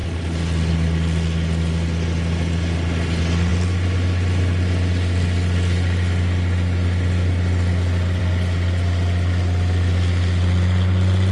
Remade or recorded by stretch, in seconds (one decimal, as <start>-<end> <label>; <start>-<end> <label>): 0.0-11.3 recorded